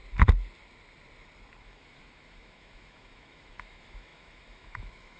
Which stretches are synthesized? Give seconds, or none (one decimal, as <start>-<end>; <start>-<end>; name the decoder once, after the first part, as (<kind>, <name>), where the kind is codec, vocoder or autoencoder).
1.6-5.2 (autoencoder, DAC-VAE)